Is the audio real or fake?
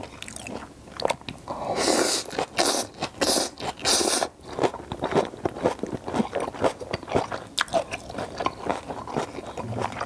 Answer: real